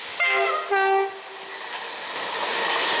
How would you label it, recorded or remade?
recorded